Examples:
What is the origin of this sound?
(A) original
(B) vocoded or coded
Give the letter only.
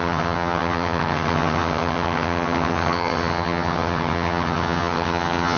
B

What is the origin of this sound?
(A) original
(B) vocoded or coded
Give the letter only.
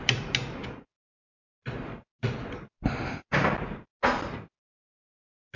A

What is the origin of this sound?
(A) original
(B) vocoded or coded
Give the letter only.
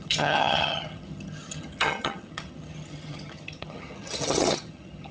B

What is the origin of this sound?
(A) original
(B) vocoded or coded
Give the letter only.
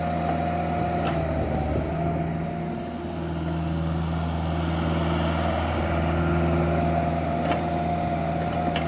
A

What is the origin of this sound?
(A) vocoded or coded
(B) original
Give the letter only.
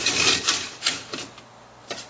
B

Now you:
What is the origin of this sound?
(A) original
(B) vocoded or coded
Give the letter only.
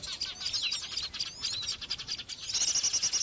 A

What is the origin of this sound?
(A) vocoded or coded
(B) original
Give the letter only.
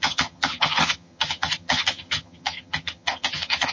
A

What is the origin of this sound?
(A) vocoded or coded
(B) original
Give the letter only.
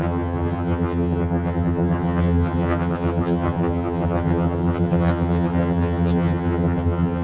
A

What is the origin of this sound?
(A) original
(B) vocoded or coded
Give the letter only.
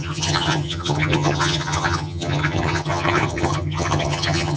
B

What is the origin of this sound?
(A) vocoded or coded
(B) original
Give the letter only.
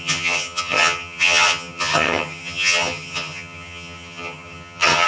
A